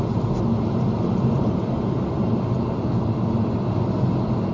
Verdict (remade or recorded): recorded